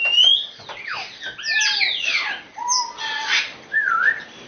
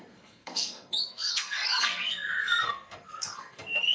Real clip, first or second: first